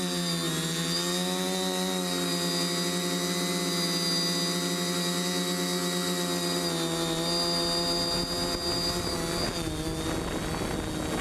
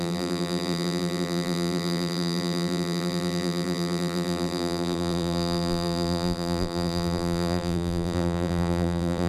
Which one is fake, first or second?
second